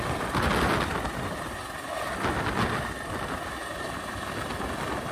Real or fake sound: real